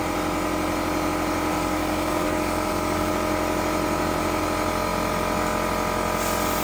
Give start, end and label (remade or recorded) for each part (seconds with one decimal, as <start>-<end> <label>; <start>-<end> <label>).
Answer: 0.0-1.5 recorded; 1.5-3.1 remade; 3.1-6.6 recorded